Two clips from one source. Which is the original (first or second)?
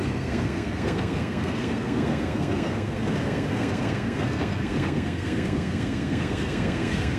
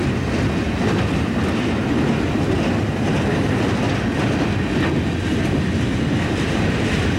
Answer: second